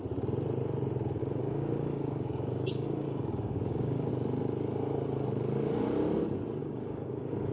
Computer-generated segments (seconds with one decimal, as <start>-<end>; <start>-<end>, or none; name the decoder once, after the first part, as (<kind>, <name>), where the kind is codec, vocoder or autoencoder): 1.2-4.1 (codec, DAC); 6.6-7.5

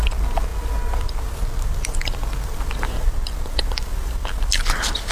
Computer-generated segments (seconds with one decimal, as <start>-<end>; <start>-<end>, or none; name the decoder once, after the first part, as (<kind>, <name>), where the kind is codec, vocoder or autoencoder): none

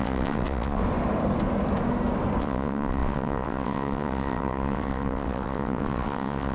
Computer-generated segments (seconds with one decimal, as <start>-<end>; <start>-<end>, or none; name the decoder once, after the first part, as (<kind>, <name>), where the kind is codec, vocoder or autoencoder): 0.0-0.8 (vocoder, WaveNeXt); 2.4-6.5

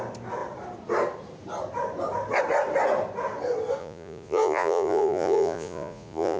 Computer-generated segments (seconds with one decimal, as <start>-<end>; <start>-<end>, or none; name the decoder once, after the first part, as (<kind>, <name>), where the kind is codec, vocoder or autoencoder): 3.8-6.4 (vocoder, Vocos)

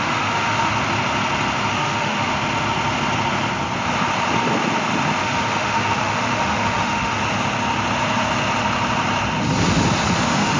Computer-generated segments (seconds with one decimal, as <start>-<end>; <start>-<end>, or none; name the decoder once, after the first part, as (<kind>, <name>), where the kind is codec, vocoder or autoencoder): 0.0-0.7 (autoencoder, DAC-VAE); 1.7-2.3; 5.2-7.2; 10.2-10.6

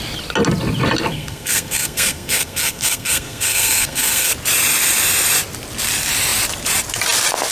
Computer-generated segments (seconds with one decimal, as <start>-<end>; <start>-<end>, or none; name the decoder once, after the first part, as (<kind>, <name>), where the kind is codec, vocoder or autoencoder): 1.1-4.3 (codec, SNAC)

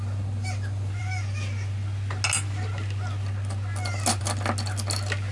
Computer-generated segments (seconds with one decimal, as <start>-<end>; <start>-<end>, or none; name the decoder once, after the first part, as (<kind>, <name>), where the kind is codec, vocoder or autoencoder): none

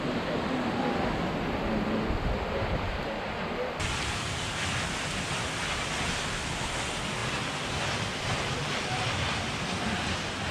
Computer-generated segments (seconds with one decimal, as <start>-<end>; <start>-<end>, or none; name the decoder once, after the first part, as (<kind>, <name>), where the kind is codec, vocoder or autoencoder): none